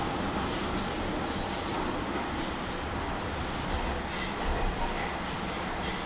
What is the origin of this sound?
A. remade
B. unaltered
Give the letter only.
B